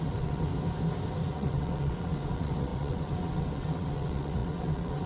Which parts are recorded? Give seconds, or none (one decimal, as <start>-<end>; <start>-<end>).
0.5-1.3